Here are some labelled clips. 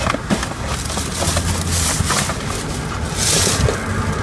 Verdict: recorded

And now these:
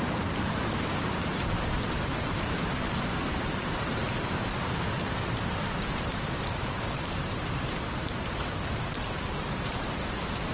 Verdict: remade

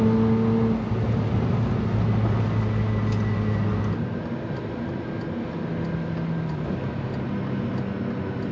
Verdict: recorded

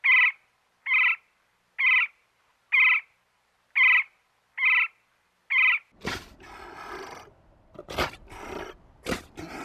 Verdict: recorded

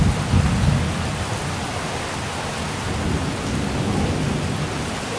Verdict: recorded